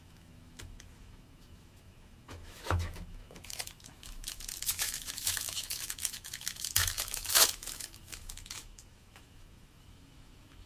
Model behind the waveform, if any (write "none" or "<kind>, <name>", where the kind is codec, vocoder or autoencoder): autoencoder, DAC-VAE